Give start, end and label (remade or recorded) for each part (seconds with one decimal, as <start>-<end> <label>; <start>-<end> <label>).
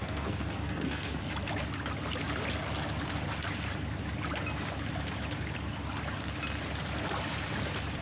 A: 0.0-1.2 remade; 1.2-8.0 recorded